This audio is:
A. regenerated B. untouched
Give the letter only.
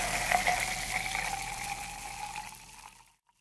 B